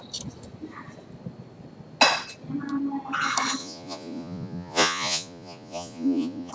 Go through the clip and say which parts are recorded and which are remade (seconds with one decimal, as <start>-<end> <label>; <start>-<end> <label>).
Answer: 0.0-3.6 recorded; 3.6-6.5 remade